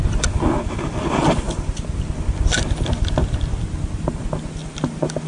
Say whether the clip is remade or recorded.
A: recorded